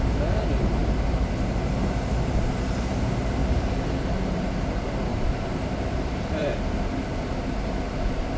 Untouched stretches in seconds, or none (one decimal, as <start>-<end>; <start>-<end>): 0.0-3.4; 4.4-5.1; 6.0-8.4